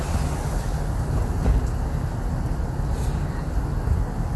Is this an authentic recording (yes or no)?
yes